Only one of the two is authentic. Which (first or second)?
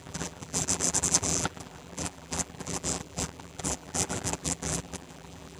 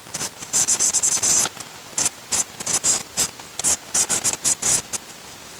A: second